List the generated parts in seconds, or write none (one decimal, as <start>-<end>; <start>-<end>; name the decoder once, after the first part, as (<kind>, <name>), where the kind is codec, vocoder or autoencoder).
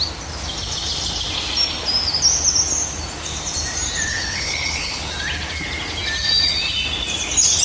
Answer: 4.1-5.1 (codec, HILCodec)